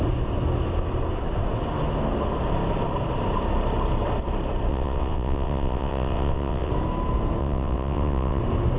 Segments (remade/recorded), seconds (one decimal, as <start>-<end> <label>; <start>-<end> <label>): 0.0-4.7 recorded; 4.7-6.7 remade; 6.7-7.4 recorded; 7.4-8.4 remade; 8.4-8.8 recorded